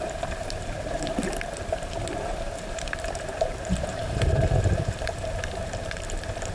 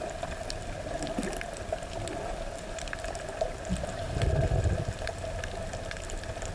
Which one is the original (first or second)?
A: second